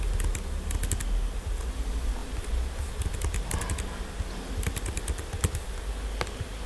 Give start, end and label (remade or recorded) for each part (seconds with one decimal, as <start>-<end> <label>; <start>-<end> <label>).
0.0-6.7 recorded